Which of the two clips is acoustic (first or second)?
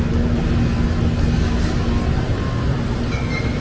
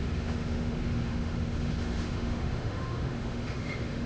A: first